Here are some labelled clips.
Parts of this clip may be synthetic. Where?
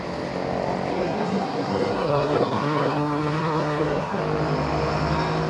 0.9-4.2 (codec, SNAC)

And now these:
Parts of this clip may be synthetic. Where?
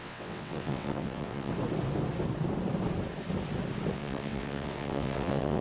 0.0-1.5 (vocoder, WaveNeXt); 3.9-5.6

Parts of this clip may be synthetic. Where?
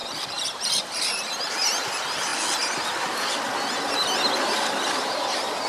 0.0-2.3 (vocoder, BigVGAN v2); 4.4-5.7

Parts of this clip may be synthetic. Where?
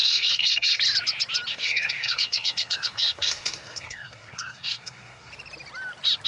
0.0-0.8 (codec, SNAC); 1.5-5.3